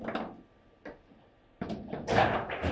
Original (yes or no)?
yes